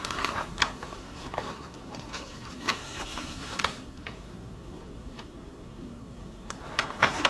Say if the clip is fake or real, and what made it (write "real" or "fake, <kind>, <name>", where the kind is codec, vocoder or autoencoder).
fake, codec, SNAC